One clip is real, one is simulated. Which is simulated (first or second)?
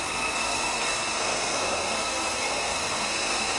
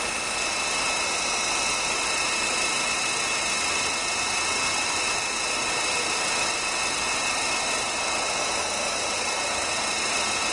first